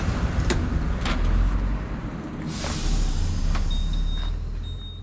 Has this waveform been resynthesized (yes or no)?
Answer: no